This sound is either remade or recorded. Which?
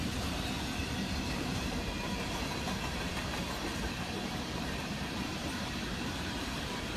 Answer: remade